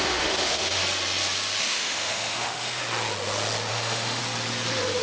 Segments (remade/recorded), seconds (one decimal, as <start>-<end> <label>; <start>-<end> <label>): 0.0-0.8 remade; 0.8-1.6 recorded; 1.6-2.8 remade; 2.8-3.7 recorded; 3.7-4.2 remade; 4.2-5.0 recorded